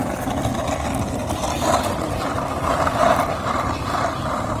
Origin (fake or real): real